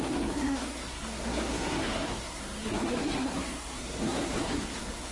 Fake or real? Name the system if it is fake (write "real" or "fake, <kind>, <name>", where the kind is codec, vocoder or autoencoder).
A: fake, codec, SNAC